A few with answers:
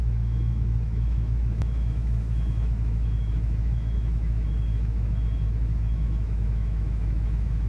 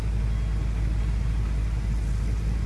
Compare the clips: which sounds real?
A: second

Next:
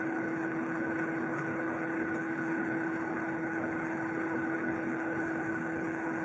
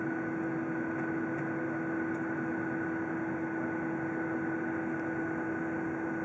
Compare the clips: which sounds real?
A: second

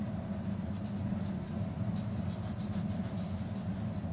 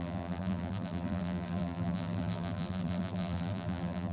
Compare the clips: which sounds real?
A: first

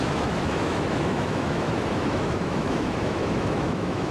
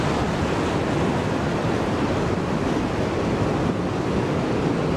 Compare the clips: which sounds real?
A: second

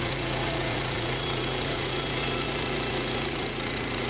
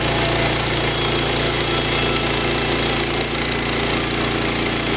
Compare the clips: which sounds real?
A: second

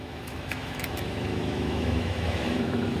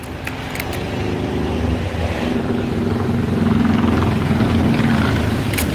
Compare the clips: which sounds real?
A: second